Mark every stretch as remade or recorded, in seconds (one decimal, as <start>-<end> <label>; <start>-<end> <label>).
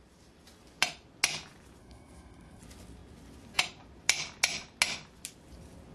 0.0-1.8 recorded; 1.8-2.6 remade; 2.6-5.9 recorded